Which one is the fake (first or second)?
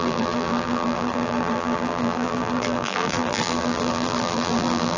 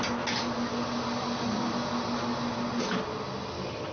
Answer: first